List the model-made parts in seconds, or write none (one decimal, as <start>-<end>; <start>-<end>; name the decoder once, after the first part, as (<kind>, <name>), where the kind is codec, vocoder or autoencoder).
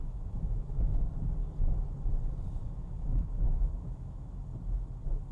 0.0-0.8 (autoencoder, DAC-VAE); 2.6-4.3